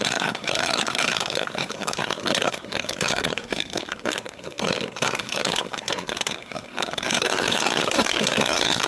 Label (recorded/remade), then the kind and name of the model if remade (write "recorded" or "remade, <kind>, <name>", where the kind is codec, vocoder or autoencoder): remade, codec, SNAC